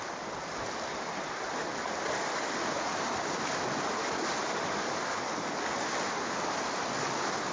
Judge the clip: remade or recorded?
recorded